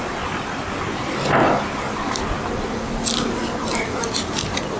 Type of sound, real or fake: real